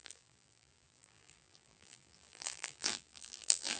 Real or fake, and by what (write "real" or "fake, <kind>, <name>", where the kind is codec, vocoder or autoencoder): fake, vocoder, BigVGAN v2